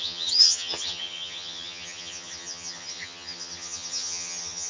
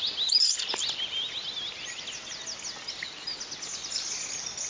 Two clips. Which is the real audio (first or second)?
second